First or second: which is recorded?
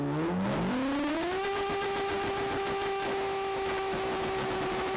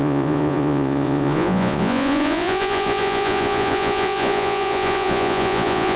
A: first